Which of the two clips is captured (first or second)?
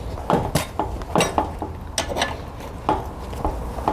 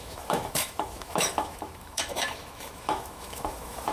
first